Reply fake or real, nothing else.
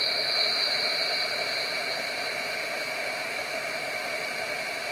real